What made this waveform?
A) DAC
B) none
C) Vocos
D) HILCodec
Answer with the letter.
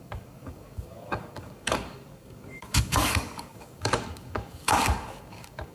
A